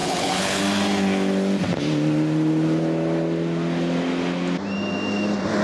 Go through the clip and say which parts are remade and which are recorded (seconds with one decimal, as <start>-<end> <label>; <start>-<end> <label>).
0.0-0.6 remade; 0.6-5.6 recorded